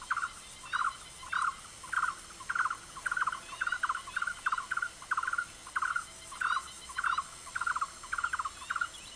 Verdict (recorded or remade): recorded